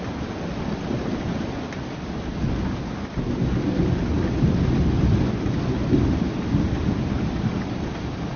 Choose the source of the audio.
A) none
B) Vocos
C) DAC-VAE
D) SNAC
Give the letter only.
A